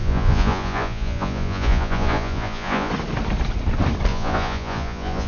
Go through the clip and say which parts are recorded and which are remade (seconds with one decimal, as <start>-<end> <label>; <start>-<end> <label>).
0.0-2.9 remade; 2.9-4.1 recorded; 4.1-5.3 remade